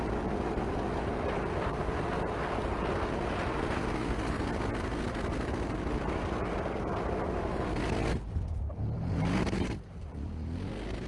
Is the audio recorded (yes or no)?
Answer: yes